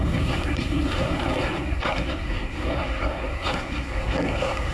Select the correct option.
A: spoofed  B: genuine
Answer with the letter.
A